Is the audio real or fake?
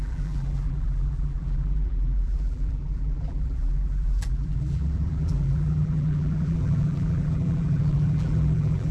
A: fake